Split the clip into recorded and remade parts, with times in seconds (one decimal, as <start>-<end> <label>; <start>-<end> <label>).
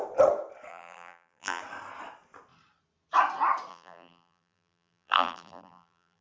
0.0-0.7 recorded; 0.7-1.6 remade; 1.6-3.7 recorded; 3.7-6.2 remade